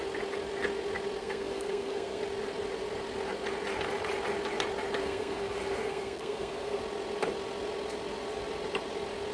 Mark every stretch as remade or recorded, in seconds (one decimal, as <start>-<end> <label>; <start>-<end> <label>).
0.0-1.2 recorded; 1.2-2.2 remade; 2.2-5.0 recorded; 5.0-6.8 remade; 6.8-9.3 recorded